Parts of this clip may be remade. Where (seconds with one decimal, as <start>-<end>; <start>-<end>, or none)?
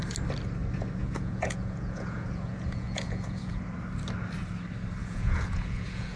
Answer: 1.0-3.6; 5.0-6.2